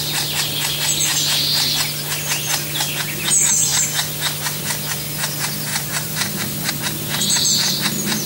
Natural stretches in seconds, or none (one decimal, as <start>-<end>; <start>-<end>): 0.0-5.7; 6.7-8.3